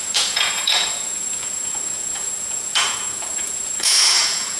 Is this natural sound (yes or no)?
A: no